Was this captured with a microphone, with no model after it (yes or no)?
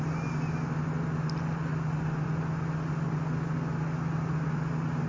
yes